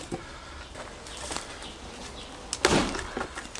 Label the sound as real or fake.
real